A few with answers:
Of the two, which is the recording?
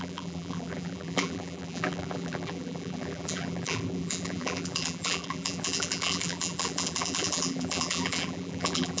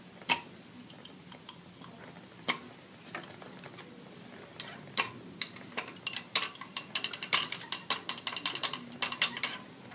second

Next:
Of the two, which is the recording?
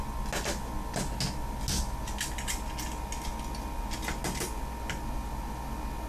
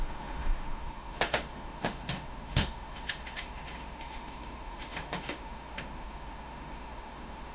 first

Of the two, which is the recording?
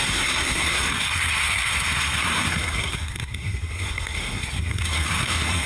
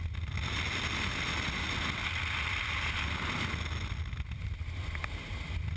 second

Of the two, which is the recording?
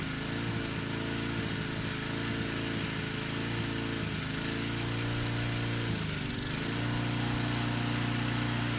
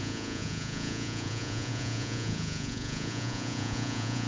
first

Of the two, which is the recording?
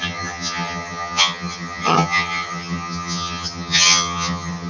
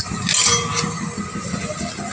second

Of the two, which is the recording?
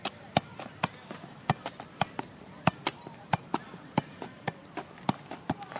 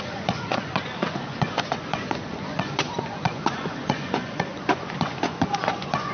first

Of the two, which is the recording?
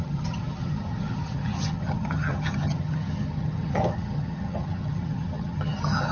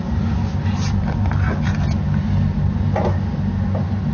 second